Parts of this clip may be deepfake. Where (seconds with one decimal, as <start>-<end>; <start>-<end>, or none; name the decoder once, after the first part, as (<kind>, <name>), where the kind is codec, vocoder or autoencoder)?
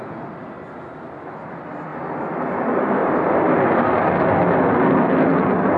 none